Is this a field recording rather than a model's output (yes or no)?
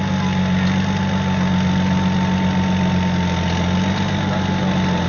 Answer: yes